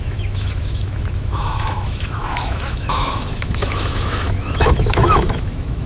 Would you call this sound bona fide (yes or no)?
no